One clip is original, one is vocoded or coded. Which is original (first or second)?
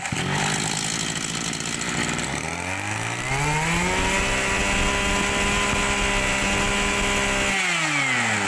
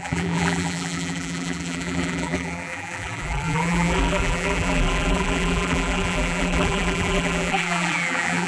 first